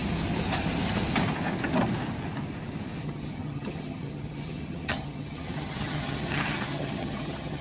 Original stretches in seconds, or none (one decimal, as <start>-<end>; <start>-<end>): 0.0-3.0